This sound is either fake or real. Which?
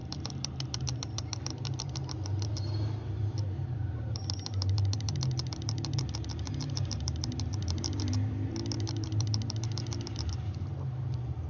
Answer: fake